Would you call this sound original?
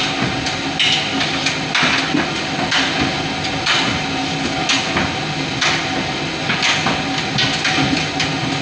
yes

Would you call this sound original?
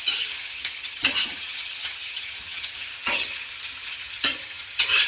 no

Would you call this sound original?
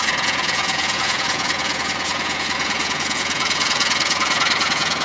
no